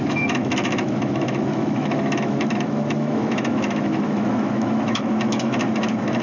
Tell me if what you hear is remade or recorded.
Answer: remade